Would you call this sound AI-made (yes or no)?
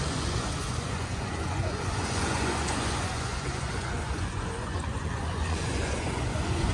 yes